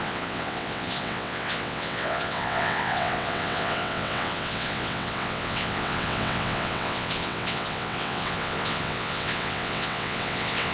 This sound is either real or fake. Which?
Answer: fake